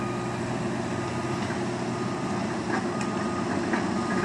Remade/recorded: recorded